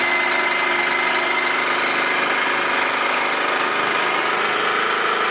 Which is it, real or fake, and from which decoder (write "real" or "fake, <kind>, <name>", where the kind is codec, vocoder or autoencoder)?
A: real